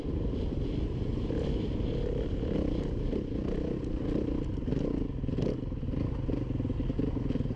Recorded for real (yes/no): yes